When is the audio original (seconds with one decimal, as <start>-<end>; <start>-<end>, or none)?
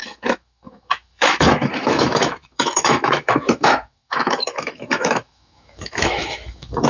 none